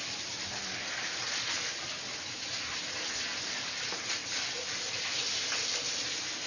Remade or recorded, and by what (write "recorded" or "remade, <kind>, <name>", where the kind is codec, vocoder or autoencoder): recorded